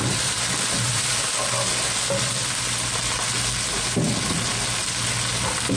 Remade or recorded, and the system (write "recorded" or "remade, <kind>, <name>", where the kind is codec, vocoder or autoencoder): recorded